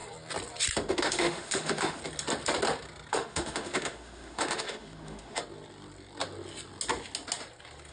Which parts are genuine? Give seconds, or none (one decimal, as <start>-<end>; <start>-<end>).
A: 0.0-0.9; 2.0-3.1; 5.4-7.9